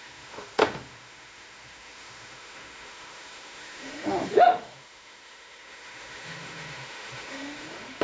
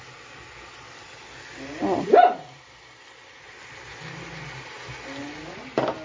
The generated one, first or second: first